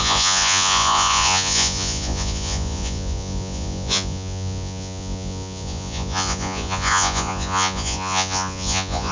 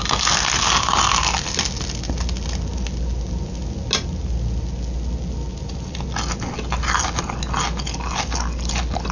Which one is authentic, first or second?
second